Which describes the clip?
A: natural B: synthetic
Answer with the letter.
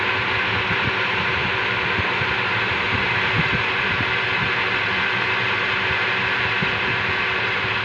A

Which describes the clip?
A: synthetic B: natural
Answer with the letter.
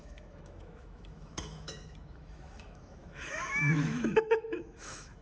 A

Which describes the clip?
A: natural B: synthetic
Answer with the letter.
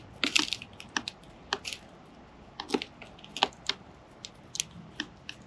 A